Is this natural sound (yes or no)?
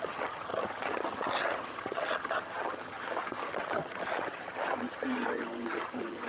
no